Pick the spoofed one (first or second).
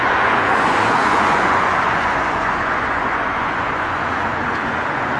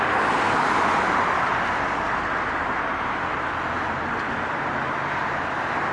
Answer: first